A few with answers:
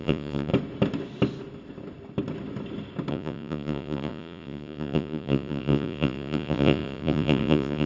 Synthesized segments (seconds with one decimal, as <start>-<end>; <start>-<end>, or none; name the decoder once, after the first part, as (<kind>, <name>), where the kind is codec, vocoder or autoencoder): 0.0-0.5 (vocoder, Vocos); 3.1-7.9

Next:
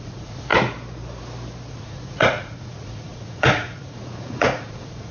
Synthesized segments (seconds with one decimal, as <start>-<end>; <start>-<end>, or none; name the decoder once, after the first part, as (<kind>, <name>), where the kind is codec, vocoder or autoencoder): 0.0-0.5 (vocoder, Vocos); 1.7-5.1

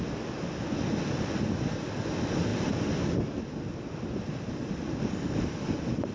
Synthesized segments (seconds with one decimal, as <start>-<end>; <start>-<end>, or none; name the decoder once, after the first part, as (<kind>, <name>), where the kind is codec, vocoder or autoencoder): none

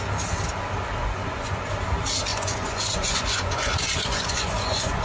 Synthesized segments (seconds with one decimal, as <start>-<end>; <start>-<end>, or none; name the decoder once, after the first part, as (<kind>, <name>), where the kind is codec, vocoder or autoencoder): 1.0-1.6 (vocoder, Vocos); 2.3-5.0

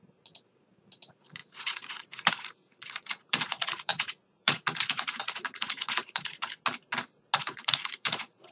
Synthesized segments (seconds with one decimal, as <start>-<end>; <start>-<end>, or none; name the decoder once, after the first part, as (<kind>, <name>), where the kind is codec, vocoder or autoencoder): 0.0-6.5 (vocoder, Vocos); 7.4-8.5

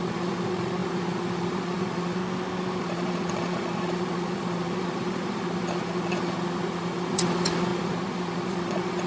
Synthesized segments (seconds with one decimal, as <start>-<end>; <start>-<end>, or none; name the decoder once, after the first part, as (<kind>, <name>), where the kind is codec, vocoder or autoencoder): 0.0-2.2 (vocoder, Vocos); 2.8-9.1